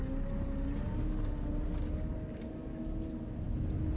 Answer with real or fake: real